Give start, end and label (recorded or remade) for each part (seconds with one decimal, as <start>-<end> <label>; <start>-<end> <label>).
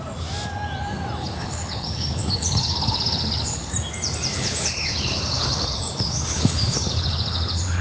0.0-1.2 recorded; 1.2-3.7 remade; 3.7-4.3 recorded; 4.3-7.8 remade